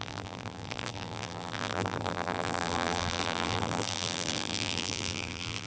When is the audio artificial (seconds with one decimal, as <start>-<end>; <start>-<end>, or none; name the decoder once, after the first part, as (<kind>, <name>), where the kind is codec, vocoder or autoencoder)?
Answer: 0.0-5.7 (vocoder, BigVGAN v2)